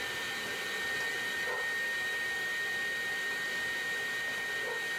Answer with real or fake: real